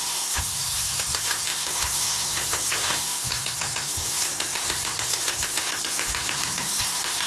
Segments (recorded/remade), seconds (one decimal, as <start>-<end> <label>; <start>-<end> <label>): 0.0-7.3 remade